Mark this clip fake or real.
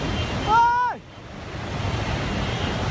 real